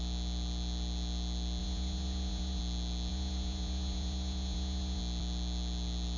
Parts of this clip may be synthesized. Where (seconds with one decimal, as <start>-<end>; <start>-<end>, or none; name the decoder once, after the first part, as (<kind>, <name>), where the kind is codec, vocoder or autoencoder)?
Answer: 1.6-2.6 (vocoder, Vocos); 3.1-5.0